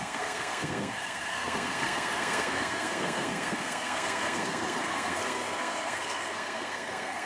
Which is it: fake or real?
fake